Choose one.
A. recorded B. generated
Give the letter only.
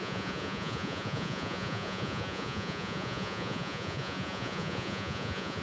B